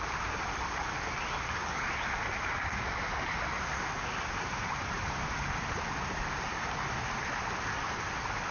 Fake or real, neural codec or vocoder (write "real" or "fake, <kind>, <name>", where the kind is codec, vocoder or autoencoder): real